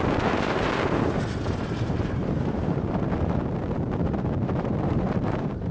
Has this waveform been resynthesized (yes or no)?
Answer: yes